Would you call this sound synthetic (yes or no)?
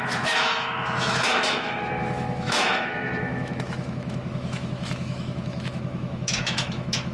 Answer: yes